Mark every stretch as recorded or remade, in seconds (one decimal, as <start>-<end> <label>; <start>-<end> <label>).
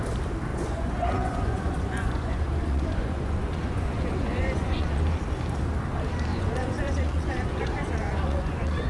0.0-0.5 recorded; 0.5-5.0 remade; 5.0-6.3 recorded; 6.3-8.9 remade